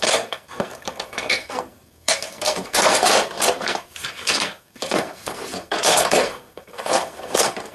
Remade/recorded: remade